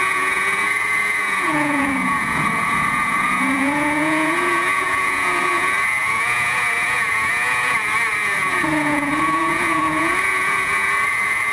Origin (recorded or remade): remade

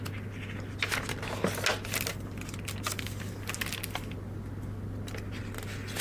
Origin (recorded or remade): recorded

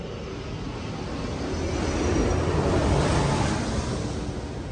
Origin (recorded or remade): recorded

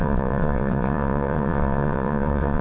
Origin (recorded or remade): remade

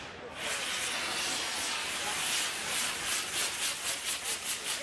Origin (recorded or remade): recorded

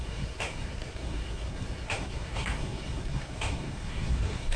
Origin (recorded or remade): remade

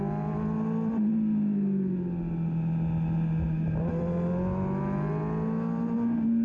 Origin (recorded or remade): recorded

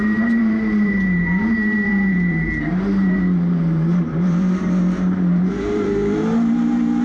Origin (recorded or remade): remade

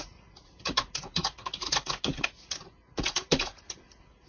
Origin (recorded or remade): remade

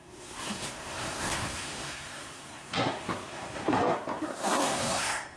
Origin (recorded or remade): remade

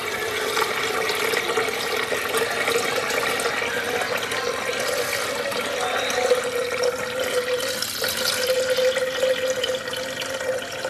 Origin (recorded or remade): recorded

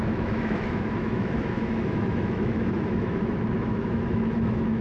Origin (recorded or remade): remade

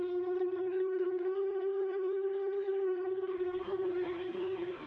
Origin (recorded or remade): remade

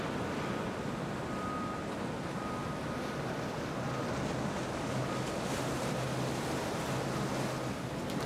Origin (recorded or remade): recorded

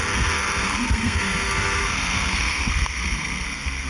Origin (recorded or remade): remade